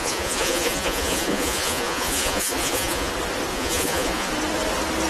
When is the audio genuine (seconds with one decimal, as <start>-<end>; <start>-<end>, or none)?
3.1-3.5; 4.3-5.1